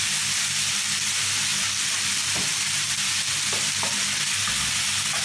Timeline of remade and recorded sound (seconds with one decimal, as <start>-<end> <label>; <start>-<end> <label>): 0.0-5.2 recorded